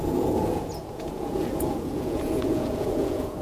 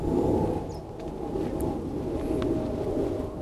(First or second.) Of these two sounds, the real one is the second